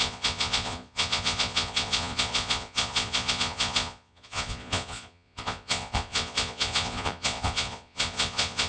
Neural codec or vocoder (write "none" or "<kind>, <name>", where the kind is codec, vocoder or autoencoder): vocoder, Vocos